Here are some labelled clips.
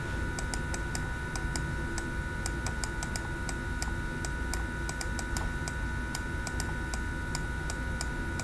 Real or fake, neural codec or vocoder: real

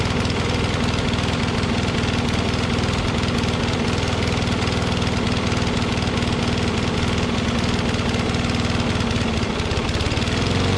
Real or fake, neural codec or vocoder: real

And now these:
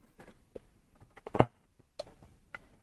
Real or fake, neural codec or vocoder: real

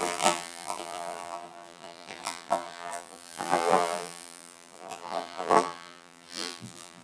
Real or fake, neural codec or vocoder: fake, vocoder, BigVGAN v2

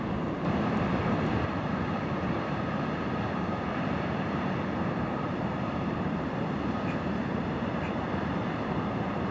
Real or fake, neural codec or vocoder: fake, vocoder, BigVGAN v2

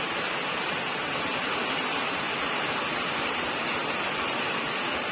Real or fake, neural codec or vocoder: real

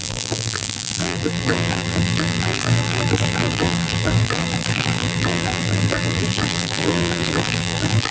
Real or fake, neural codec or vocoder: fake, vocoder, BigVGAN v2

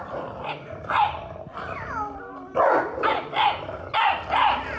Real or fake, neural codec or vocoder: real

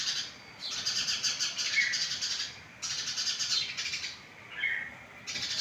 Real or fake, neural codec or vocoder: real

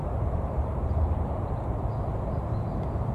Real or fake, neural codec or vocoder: fake, vocoder, BigVGAN v2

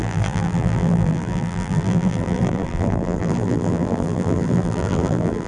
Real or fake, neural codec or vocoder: fake, vocoder, BigVGAN v2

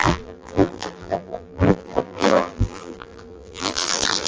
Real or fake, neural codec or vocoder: fake, vocoder, BigVGAN v2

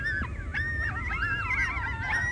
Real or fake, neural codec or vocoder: real